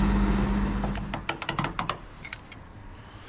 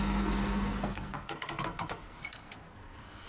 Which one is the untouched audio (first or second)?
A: first